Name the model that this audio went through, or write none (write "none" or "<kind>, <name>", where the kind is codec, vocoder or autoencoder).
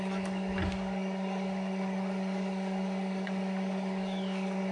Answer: codec, DAC